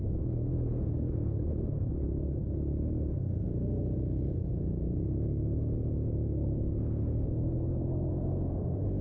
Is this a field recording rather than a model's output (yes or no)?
yes